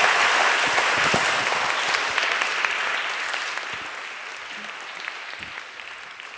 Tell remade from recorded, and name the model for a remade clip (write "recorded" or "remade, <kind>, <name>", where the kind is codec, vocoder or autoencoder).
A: recorded